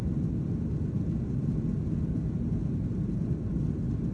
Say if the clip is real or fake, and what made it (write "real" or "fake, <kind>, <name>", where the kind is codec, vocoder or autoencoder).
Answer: real